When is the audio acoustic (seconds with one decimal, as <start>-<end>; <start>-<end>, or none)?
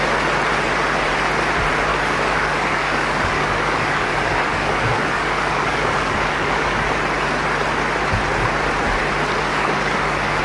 0.0-1.9; 6.8-9.5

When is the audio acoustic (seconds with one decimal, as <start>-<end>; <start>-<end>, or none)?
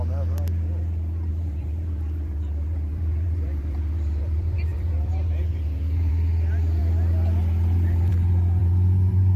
0.0-1.3; 6.1-8.6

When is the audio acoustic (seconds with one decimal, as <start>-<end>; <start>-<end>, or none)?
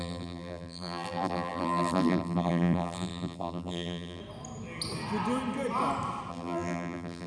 4.2-6.3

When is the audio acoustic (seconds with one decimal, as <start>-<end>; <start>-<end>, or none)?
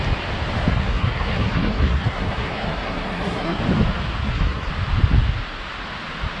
0.0-0.7; 3.6-4.2; 4.7-6.4